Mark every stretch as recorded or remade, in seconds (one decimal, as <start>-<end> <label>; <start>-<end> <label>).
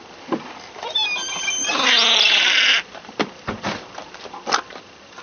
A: 0.0-2.7 recorded; 2.7-3.9 remade; 3.9-5.2 recorded